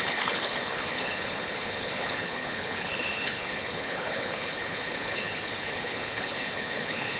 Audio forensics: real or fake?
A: fake